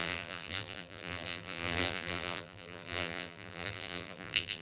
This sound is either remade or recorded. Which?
remade